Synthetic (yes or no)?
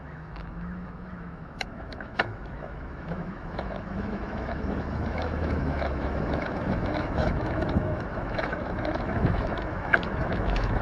yes